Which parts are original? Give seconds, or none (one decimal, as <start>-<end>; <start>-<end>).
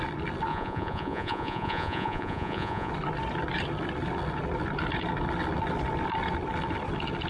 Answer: 0.0-0.5; 2.9-7.3